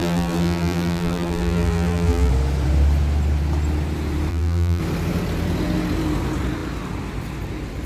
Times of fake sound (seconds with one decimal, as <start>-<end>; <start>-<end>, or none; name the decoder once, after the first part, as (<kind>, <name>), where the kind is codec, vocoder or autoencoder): 0.0-2.3 (vocoder, BigVGAN v2); 4.3-4.8